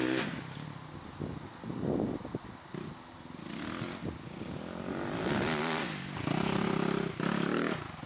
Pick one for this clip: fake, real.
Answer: real